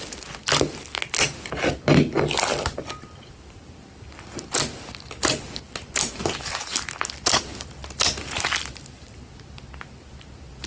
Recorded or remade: recorded